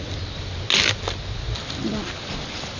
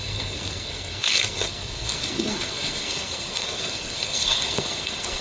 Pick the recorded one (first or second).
first